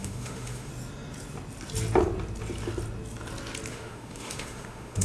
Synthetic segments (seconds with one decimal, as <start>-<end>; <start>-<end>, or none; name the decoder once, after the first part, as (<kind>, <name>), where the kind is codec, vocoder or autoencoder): 0.0-0.7 (autoencoder, DAC-VAE); 3.7-5.0